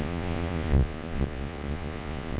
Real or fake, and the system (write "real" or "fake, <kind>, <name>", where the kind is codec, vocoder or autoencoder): fake, vocoder, Vocos